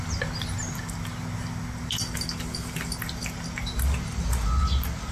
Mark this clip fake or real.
real